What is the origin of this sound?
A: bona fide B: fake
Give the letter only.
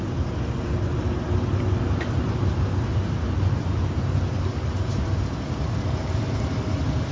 A